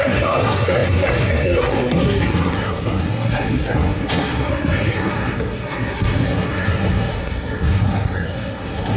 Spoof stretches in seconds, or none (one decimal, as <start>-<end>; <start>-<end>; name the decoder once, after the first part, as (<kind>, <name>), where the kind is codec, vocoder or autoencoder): 0.0-9.0 (codec, SNAC)